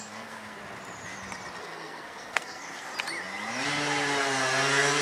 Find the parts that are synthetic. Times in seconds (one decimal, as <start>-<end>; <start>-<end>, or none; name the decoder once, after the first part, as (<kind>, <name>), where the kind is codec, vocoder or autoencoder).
0.0-0.6 (codec, SNAC); 1.6-2.9